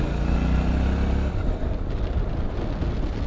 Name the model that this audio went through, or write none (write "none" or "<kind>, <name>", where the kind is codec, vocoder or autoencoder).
none